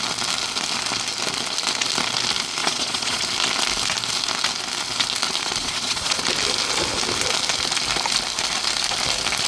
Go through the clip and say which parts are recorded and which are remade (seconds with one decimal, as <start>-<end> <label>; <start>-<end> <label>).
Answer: 0.0-2.6 recorded; 2.6-3.2 remade; 3.2-5.6 recorded; 5.6-6.2 remade; 6.2-9.5 recorded

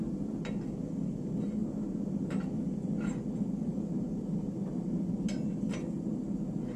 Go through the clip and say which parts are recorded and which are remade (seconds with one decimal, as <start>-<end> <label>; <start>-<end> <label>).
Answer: 0.0-6.8 recorded

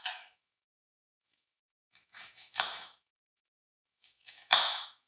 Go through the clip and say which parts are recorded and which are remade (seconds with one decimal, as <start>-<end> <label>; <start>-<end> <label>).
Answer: 0.0-5.1 remade

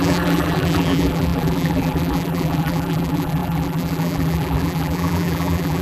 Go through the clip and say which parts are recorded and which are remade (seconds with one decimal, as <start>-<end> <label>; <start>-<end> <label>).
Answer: 0.0-5.8 remade

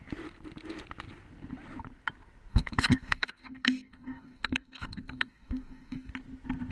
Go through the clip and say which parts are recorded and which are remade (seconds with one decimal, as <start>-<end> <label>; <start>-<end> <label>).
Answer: 0.0-2.5 recorded; 2.5-6.1 remade; 6.1-6.7 recorded